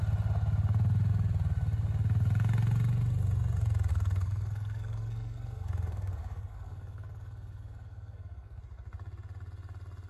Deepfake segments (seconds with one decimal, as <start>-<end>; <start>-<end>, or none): 3.9-8.6